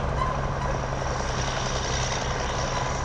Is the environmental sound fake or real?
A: real